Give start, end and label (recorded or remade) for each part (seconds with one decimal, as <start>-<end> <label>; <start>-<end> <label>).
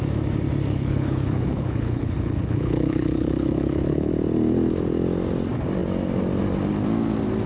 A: 0.0-0.7 recorded; 0.7-4.1 remade; 4.1-7.5 recorded